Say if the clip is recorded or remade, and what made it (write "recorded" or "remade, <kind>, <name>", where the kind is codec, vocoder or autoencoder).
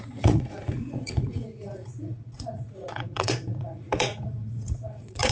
remade, vocoder, Vocos